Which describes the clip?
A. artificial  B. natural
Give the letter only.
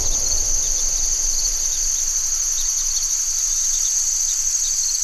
B